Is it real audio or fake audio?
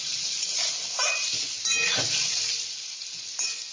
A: real